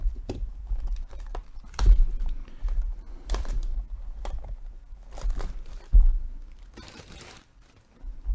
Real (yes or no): no